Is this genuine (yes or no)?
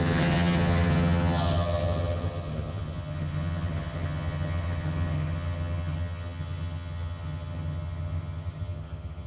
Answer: no